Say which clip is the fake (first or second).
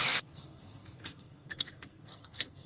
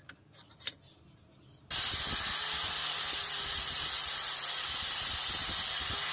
first